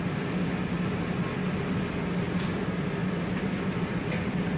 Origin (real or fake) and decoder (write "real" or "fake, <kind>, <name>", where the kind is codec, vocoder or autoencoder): real